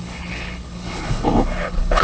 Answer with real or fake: fake